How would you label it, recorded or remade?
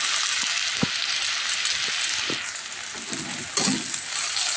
recorded